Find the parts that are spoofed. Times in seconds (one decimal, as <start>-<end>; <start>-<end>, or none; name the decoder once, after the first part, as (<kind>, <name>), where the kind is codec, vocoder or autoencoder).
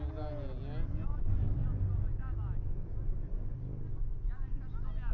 none